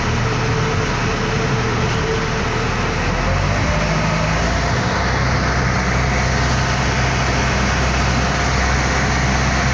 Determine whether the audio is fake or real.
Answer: real